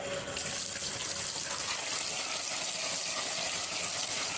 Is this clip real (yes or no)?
yes